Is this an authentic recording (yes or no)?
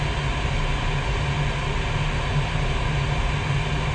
yes